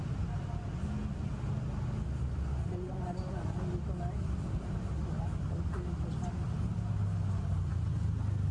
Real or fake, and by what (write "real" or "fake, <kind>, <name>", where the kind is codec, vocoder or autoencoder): real